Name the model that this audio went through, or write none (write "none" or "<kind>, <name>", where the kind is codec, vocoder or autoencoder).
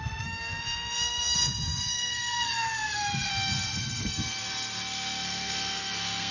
codec, SNAC